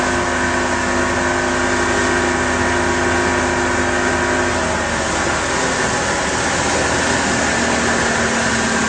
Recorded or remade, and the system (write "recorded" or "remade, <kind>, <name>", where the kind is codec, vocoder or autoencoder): recorded